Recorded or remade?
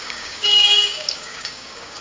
remade